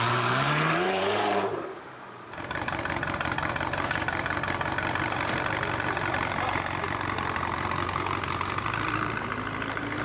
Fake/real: fake